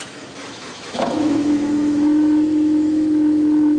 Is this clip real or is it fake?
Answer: fake